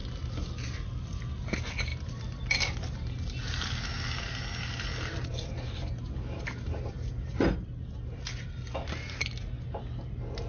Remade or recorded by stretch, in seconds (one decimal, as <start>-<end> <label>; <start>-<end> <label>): 0.0-10.5 recorded